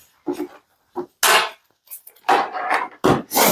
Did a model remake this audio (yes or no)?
no